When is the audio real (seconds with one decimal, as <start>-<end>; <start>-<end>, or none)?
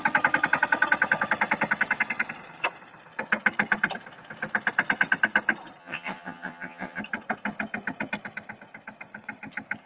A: 0.0-5.8; 7.0-9.9